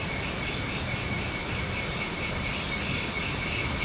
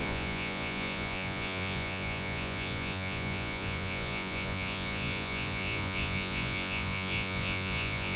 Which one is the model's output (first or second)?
second